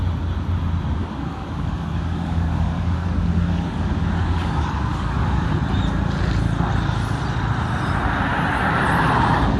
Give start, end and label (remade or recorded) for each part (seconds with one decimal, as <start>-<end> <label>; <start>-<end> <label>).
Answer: 0.0-1.0 recorded; 1.0-5.5 remade; 5.5-9.6 recorded